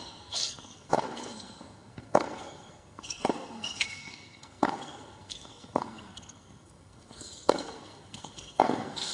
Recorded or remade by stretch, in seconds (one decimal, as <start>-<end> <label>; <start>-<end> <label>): 0.0-9.1 remade